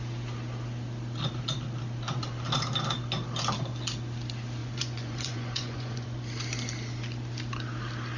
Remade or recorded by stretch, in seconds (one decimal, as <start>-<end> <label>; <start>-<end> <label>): 0.0-4.6 recorded; 4.6-6.2 remade; 6.2-8.2 recorded